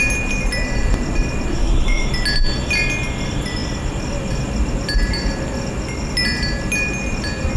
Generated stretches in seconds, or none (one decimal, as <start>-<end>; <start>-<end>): 1.6-2.1